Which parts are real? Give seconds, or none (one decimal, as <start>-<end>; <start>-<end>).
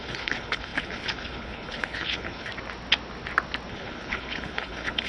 2.5-3.7